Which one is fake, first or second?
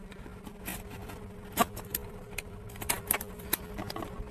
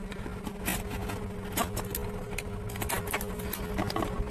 first